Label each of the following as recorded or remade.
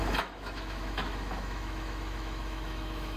remade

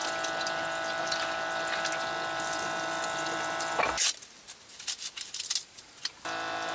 recorded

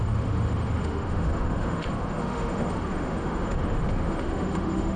remade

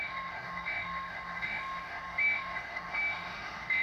remade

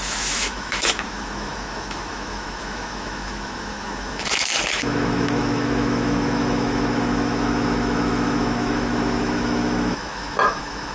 remade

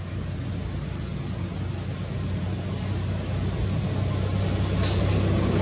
recorded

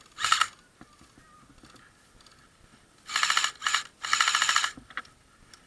recorded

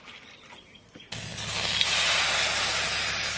recorded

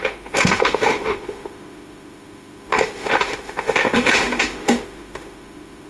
remade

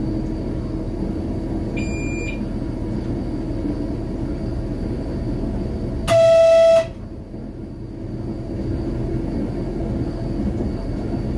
recorded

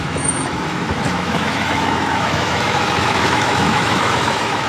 remade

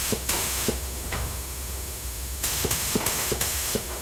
remade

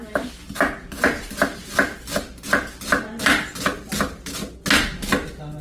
recorded